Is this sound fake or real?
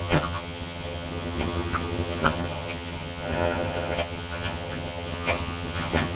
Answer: fake